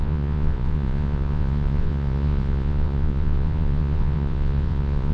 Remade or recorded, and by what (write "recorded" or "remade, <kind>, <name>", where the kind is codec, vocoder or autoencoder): remade, vocoder, Vocos